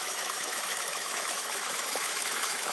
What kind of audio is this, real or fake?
fake